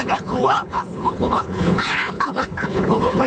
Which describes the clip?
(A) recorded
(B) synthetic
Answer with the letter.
B